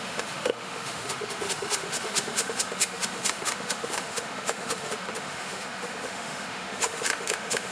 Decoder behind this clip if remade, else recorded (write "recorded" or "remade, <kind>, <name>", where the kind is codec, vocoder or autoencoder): remade, autoencoder, DAC-VAE